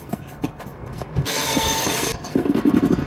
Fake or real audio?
fake